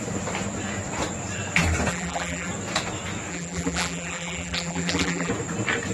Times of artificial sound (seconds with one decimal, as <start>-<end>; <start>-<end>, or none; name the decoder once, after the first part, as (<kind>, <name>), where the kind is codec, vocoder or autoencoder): 1.9-2.5 (vocoder, BigVGAN v2); 3.3-5.3